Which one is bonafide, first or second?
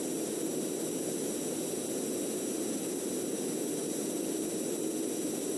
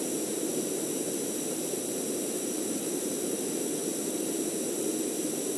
first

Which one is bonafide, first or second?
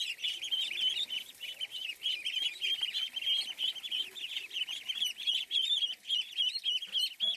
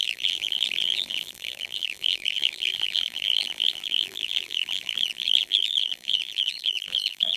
first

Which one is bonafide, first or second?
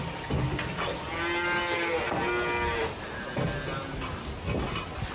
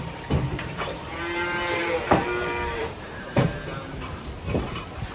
first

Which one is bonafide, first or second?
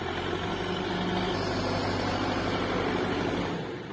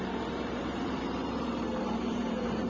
first